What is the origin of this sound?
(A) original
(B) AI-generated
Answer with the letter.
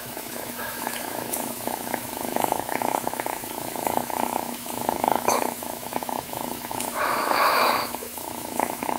B